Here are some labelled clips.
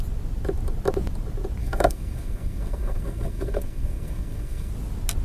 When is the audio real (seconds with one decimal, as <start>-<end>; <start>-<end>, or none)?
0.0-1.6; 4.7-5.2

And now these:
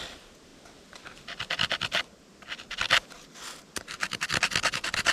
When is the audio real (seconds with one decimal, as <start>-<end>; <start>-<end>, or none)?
0.0-5.1

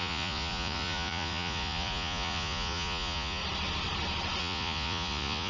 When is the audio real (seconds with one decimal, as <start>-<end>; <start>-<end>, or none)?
3.4-4.4

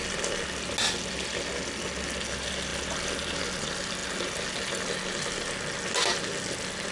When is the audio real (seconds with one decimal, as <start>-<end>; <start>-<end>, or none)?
0.0-6.9

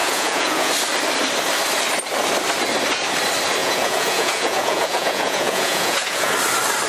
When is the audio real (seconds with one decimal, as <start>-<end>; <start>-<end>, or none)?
0.7-3.6; 6.3-6.9

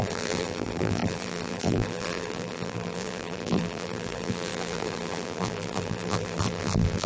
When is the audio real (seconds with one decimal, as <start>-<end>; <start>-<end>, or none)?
none